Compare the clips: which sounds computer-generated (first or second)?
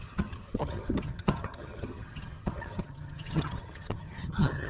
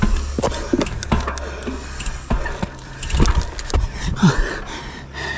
first